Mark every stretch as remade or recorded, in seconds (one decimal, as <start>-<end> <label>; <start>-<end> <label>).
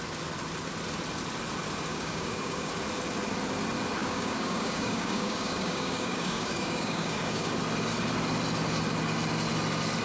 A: 0.0-1.9 recorded; 1.9-2.7 remade; 2.7-4.0 recorded; 4.0-7.5 remade; 7.5-10.0 recorded